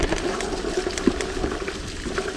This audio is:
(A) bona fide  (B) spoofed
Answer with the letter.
A